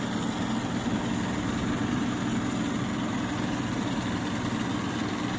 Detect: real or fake real